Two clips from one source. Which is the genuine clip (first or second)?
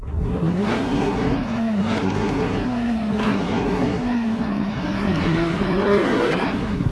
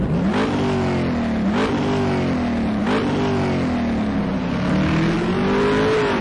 second